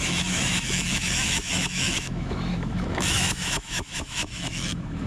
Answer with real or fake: fake